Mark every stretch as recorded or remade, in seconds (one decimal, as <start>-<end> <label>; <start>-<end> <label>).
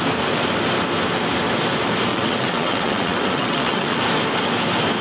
0.0-2.1 recorded; 2.1-4.0 remade; 4.0-5.0 recorded